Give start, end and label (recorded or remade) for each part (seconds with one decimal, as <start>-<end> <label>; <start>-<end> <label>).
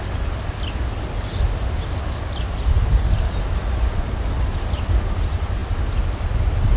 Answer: 0.0-6.8 recorded